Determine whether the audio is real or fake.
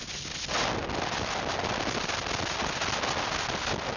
real